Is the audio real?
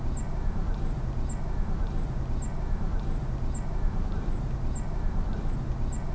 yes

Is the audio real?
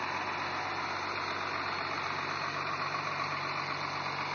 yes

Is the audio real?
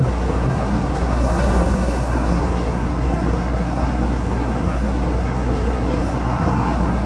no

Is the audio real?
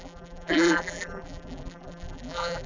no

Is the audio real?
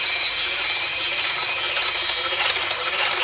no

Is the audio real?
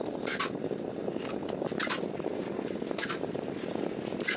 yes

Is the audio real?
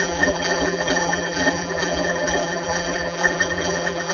no